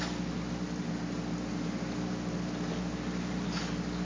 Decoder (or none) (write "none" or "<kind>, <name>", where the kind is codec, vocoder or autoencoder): none